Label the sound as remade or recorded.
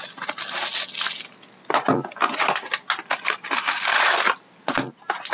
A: recorded